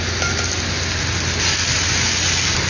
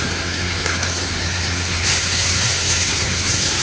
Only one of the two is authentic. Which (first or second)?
first